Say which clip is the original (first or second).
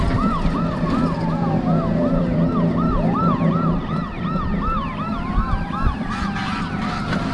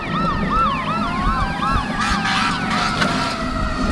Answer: second